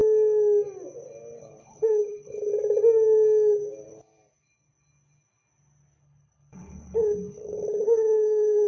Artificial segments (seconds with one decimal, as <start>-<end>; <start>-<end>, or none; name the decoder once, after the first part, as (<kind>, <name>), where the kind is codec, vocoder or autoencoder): 1.4-2.5 (codec, HILCodec); 6.0-8.7